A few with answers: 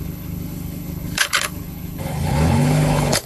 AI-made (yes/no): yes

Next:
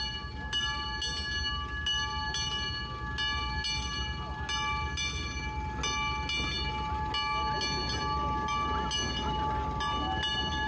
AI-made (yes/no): no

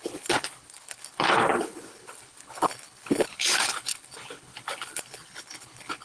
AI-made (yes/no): yes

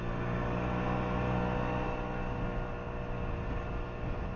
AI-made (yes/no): no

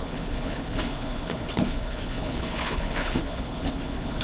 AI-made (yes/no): yes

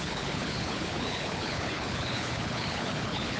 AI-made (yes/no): yes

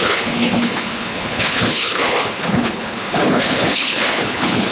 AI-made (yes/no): yes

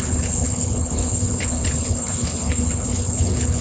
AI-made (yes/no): yes